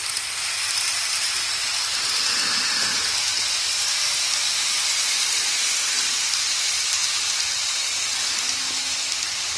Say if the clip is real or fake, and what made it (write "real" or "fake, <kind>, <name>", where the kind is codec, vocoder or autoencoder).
real